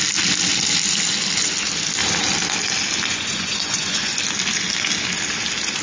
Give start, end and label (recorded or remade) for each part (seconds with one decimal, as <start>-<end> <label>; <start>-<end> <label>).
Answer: 0.0-3.1 recorded; 3.1-4.1 remade; 4.1-5.8 recorded